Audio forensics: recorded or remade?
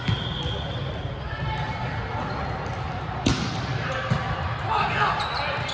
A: recorded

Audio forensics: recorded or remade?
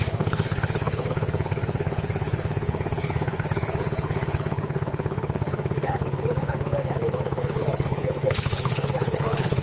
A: remade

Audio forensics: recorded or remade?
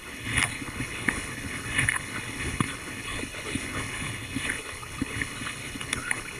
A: remade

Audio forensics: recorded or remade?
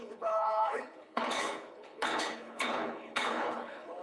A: remade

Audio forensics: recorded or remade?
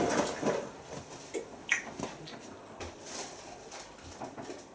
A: recorded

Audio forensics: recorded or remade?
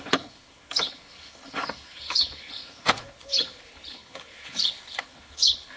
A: remade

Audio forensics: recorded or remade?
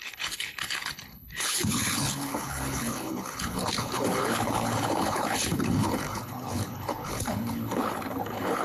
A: remade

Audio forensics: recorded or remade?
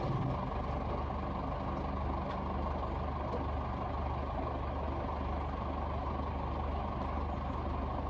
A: recorded